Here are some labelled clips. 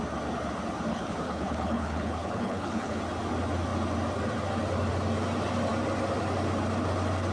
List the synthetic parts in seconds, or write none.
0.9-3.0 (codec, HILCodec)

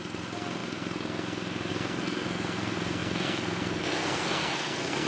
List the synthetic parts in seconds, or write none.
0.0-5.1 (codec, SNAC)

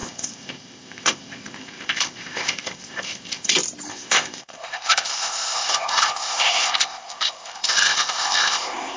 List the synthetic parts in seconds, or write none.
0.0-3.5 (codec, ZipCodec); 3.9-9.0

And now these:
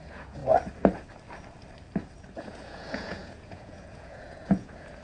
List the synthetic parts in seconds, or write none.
0.0-0.4 (vocoder, Vocos); 2.4-5.0

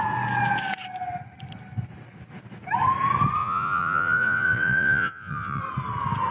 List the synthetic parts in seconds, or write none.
3.4-5.6 (vocoder, Vocos)

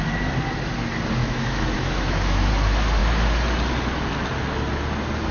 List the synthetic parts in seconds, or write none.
1.2-2.5 (autoencoder, DAC-VAE)

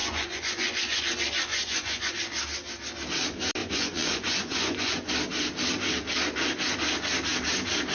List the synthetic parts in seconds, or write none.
0.0-1.0 (vocoder, Vocos); 1.5-2.1; 3.6-5.1